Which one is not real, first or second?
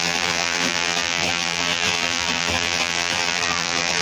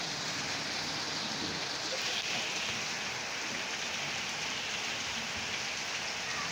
first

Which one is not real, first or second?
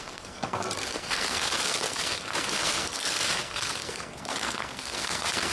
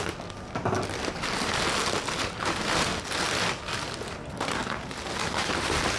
first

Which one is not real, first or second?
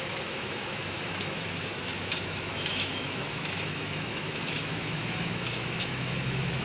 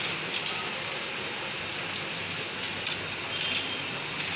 first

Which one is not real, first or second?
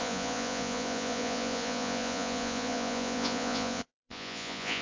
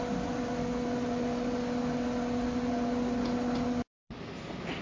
first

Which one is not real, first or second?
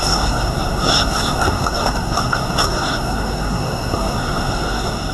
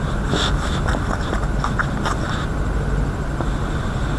first